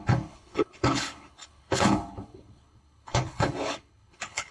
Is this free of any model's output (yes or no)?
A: no